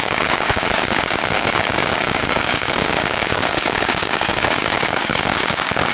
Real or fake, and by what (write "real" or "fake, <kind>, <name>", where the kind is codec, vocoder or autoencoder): fake, codec, DAC